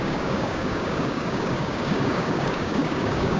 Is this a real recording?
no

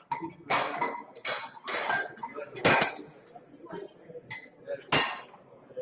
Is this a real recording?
yes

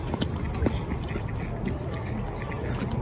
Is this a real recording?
yes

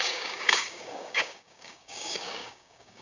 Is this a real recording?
no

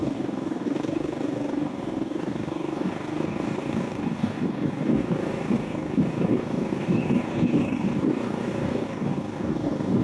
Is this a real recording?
no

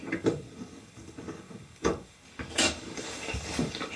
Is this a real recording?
no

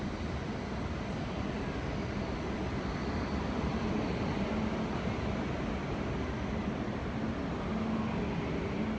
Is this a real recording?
yes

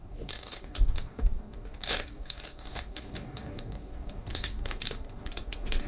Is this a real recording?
no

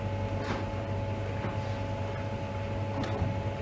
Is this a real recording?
yes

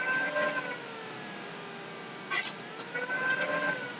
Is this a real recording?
yes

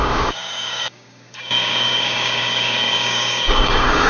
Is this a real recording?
no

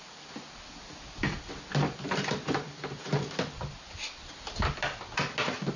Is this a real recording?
yes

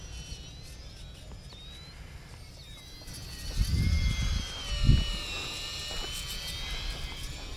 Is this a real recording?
yes